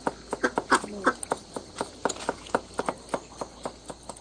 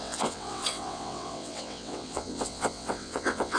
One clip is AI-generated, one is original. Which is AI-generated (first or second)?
second